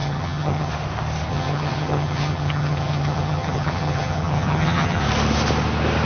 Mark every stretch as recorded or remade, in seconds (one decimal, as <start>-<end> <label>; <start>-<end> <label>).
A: 0.0-0.7 remade; 0.7-1.3 recorded; 1.3-5.0 remade; 5.0-6.1 recorded